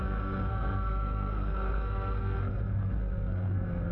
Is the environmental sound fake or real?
fake